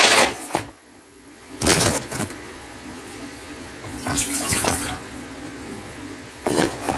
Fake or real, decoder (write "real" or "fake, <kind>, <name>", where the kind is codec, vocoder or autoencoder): fake, vocoder, Vocos